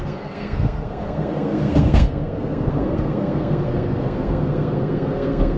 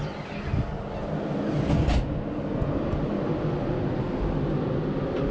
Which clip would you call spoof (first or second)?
first